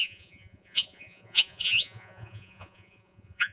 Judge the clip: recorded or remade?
remade